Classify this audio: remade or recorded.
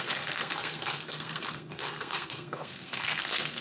remade